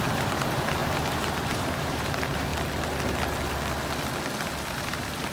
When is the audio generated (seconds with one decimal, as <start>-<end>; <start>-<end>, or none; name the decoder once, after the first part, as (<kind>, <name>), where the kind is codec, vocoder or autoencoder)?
0.0-2.5 (vocoder, BigVGAN v2); 4.7-5.3